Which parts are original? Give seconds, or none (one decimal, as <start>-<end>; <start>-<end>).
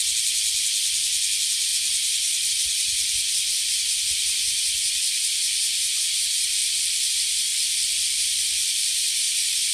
0.0-1.7; 2.5-6.6; 7.1-7.5